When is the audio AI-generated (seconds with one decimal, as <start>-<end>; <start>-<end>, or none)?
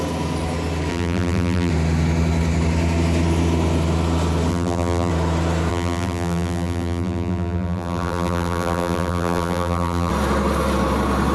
0.9-1.7; 4.5-5.1; 5.7-10.1